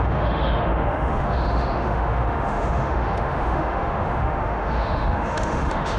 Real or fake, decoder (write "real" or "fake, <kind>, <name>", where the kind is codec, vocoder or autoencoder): fake, autoencoder, DAC-VAE